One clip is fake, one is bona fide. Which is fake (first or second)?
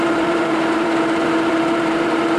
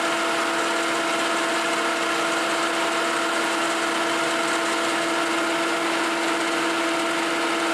first